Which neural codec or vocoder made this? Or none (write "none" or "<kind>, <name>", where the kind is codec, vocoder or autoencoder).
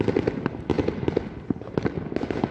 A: none